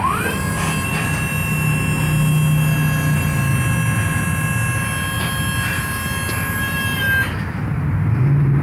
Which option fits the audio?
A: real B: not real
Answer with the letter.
A